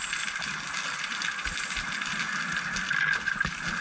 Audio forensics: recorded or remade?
recorded